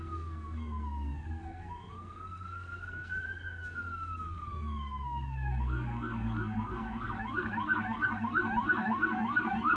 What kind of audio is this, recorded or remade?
remade